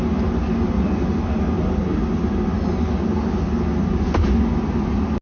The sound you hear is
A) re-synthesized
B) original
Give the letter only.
B